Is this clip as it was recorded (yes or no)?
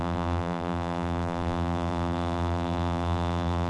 no